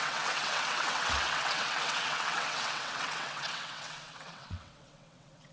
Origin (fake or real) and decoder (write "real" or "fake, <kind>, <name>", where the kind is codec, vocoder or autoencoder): fake, vocoder, WaveNeXt